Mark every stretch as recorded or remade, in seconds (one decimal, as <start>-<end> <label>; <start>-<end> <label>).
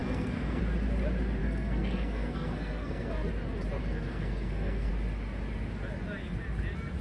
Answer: 0.0-0.6 remade; 0.6-1.4 recorded; 1.4-3.3 remade; 3.3-3.8 recorded; 3.8-4.9 remade; 4.9-7.0 recorded